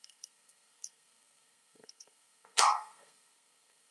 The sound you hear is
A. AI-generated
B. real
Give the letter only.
A